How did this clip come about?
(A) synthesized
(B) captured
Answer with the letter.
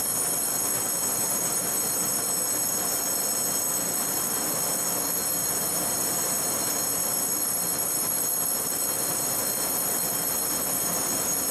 B